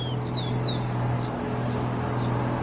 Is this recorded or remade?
recorded